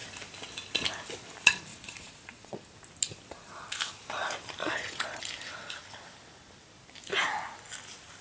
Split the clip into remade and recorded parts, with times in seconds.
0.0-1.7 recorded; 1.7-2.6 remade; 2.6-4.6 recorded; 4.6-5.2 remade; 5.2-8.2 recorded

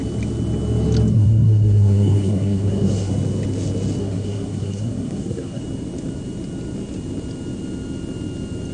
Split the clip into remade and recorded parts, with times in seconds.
0.0-1.1 recorded; 1.1-3.1 remade; 3.1-4.0 recorded; 4.0-5.6 remade; 5.6-8.7 recorded

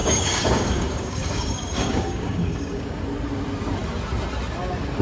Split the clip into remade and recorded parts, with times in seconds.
0.0-3.0 remade; 3.0-5.0 recorded

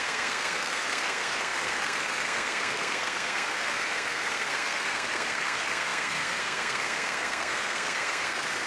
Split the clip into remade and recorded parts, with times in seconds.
0.0-8.7 remade

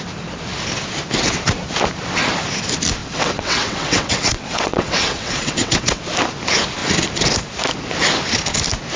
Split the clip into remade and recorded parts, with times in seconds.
0.0-3.0 recorded; 3.0-6.0 remade; 6.0-9.0 recorded